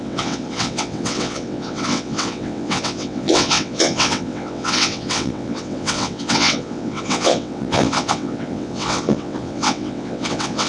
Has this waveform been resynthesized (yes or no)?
yes